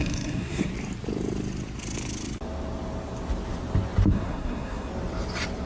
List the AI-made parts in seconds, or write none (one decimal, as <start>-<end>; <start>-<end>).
0.0-0.7; 4.1-4.9